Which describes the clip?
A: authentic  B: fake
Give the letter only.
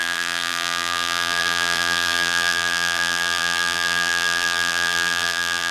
B